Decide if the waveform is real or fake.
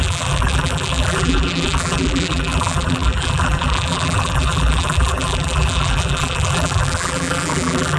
fake